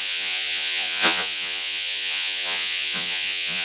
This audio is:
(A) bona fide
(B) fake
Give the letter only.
B